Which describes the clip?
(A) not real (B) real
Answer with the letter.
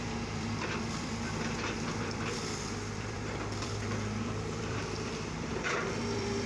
A